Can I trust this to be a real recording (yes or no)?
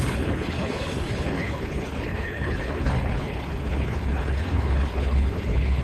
no